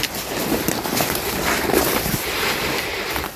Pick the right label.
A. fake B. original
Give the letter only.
A